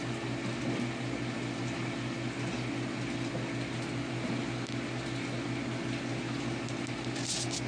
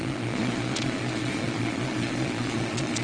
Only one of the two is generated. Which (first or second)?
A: second